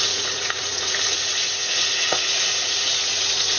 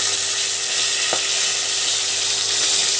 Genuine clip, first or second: second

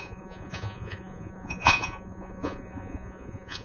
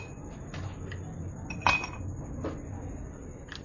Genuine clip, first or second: second